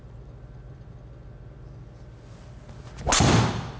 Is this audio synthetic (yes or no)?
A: no